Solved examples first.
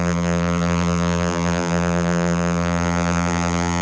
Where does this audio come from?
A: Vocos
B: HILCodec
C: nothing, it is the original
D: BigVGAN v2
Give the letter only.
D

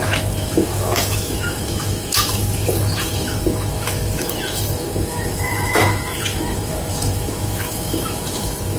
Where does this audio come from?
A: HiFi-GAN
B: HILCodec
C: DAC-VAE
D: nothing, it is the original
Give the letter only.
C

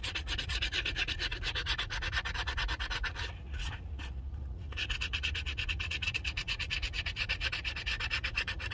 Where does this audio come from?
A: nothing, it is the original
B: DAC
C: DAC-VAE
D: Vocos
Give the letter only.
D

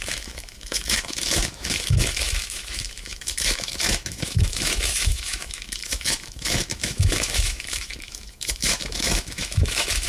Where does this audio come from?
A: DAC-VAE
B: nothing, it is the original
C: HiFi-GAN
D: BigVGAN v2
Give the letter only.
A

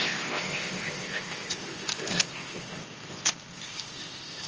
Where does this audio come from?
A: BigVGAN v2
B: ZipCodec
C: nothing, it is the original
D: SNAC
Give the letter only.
B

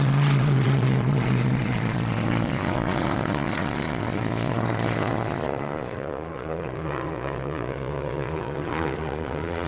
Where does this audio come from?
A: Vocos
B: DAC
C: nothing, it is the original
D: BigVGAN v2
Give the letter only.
A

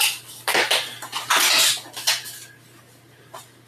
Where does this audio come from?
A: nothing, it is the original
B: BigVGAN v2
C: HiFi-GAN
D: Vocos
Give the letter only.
A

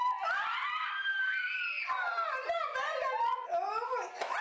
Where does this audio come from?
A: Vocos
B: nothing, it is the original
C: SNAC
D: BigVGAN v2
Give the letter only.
B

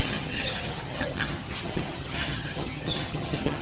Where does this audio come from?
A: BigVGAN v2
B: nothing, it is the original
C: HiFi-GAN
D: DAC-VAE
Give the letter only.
C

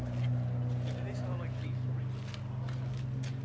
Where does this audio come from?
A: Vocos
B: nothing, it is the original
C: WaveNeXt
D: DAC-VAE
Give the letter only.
B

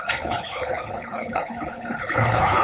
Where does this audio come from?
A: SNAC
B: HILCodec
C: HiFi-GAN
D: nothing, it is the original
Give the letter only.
B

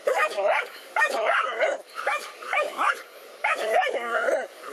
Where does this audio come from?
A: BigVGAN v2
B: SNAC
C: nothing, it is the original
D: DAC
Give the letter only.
D